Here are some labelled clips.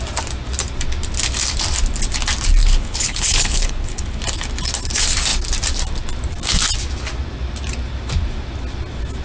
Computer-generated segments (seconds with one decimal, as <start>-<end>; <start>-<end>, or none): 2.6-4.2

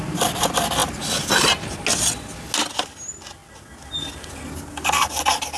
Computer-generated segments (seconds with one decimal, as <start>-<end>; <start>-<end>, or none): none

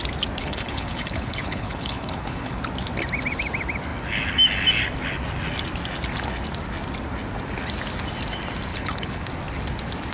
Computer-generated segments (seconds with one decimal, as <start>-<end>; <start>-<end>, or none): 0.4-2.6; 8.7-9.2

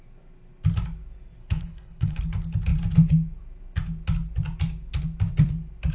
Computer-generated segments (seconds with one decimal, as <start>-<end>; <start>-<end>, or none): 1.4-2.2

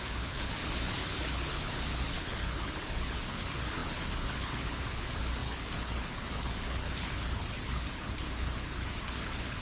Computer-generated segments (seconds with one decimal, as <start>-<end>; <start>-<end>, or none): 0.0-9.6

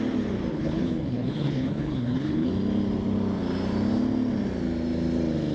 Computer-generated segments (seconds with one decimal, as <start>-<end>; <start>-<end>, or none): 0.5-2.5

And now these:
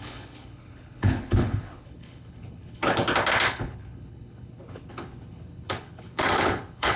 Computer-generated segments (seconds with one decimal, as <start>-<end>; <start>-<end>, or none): 0.0-3.0; 3.5-7.0